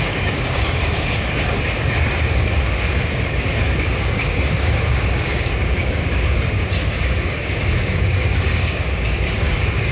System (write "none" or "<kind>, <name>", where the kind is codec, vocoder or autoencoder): codec, DAC